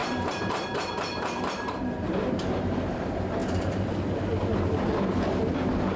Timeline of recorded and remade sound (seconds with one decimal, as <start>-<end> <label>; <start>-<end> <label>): 0.0-3.4 remade; 3.4-6.0 recorded